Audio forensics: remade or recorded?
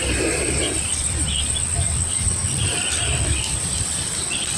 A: recorded